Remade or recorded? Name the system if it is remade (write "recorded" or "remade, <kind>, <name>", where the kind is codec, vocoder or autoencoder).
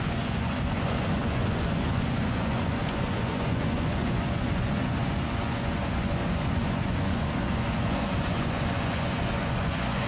remade, vocoder, Vocos